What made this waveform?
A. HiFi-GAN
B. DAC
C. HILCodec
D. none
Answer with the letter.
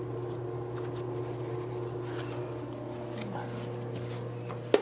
D